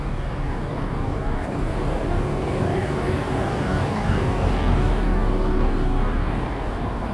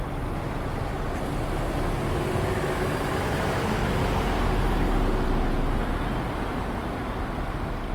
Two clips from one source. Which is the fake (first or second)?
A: first